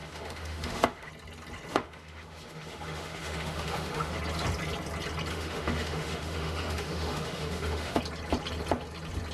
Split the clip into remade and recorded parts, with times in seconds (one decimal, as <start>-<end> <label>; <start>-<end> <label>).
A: 0.0-1.1 remade; 1.1-1.7 recorded; 1.7-4.2 remade; 4.2-5.3 recorded; 5.3-8.0 remade; 8.0-9.3 recorded